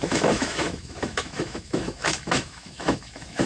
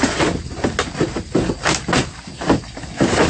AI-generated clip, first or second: first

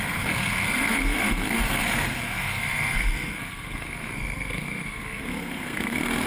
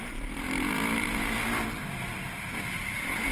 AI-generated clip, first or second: first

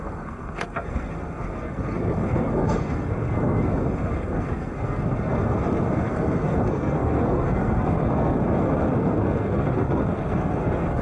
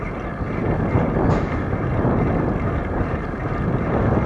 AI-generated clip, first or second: first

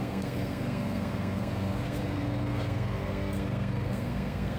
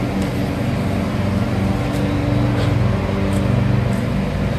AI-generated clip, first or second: first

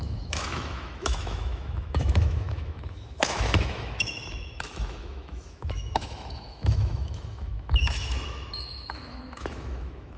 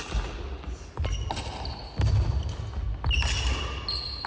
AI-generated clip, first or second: first